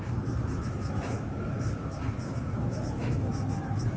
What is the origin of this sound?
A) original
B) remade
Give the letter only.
B